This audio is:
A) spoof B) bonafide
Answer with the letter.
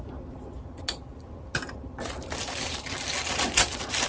B